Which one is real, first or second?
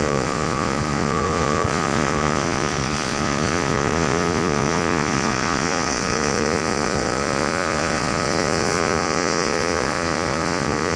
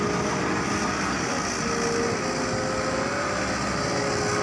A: second